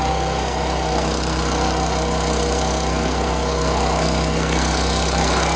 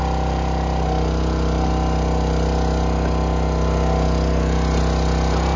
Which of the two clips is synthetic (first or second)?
first